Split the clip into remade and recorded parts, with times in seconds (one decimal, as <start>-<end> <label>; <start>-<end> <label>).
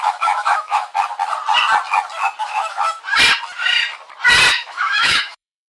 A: 0.0-0.9 remade; 0.9-2.4 recorded; 2.4-3.0 remade; 3.0-4.5 recorded; 4.5-5.7 remade